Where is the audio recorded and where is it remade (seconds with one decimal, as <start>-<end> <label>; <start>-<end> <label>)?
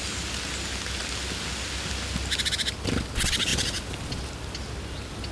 0.0-5.3 recorded